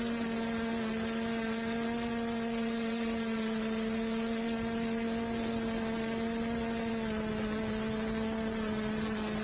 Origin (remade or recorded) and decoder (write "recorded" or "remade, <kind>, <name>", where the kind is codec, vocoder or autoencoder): recorded